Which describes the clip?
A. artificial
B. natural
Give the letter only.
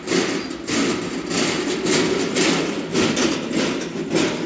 B